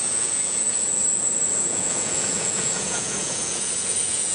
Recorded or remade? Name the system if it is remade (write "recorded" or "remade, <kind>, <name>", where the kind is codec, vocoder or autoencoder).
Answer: remade, vocoder, Vocos